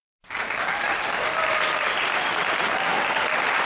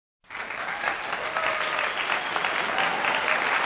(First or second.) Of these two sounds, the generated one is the first